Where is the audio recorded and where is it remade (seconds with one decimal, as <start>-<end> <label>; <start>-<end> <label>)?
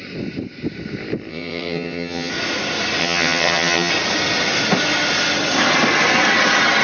0.0-1.3 recorded; 1.3-2.3 remade; 2.3-3.0 recorded; 3.0-3.9 remade; 3.9-6.8 recorded